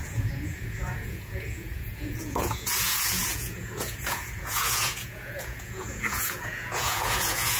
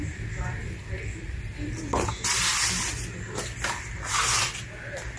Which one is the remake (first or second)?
first